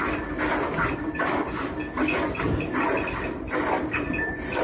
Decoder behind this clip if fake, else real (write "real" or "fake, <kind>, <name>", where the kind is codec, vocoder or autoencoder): real